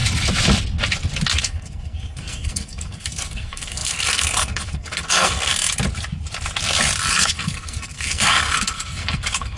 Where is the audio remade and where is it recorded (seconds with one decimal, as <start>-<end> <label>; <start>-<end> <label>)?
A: 0.0-1.4 recorded; 1.4-5.5 remade; 5.5-7.1 recorded; 7.1-9.6 remade